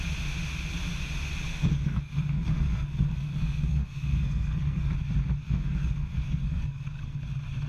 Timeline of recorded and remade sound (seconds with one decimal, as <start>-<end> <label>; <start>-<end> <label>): 0.0-1.5 recorded; 1.5-4.9 remade; 4.9-5.4 recorded; 5.4-7.2 remade; 7.2-7.7 recorded